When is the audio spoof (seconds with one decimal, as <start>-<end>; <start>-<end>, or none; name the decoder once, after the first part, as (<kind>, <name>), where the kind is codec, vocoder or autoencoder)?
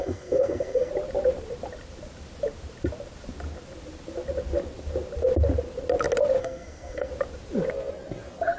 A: 0.0-0.9 (codec, SNAC); 6.4-7.1